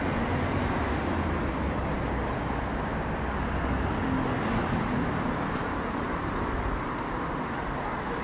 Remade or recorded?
recorded